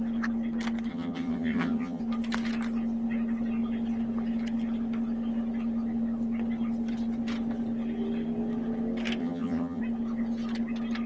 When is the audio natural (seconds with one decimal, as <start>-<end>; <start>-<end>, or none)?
0.0-0.9; 2.0-9.2; 9.8-11.1